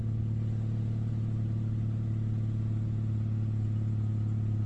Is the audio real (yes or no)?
yes